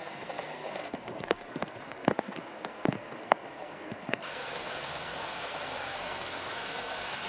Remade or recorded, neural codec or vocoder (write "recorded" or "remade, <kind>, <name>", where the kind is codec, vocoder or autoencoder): remade, codec, SNAC